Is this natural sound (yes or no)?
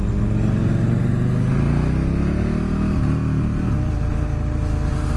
yes